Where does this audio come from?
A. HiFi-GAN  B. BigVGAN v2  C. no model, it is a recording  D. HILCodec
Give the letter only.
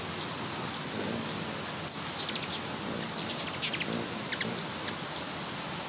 C